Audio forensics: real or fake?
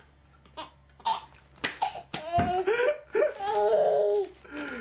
real